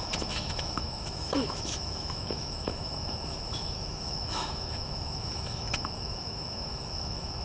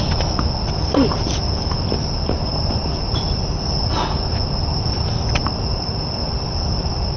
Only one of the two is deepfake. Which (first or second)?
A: first